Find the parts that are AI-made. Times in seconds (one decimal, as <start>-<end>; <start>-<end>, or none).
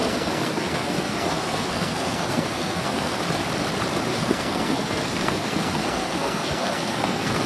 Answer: 0.0-3.2; 4.1-7.5